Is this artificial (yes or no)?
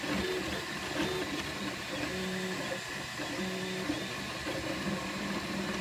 no